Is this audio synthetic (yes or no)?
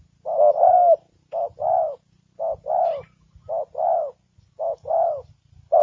no